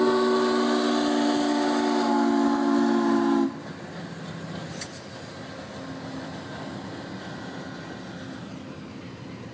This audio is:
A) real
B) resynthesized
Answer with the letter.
A